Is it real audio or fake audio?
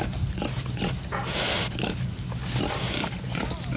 real